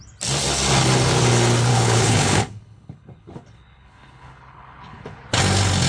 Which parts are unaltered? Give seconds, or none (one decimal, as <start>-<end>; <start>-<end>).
0.0-1.7; 5.2-5.9